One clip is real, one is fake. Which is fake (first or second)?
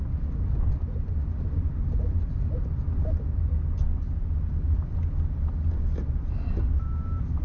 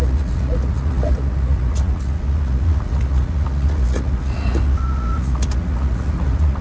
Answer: second